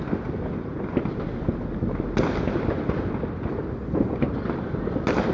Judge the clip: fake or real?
real